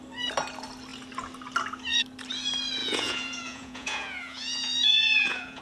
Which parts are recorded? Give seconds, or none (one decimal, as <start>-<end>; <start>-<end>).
0.0-2.8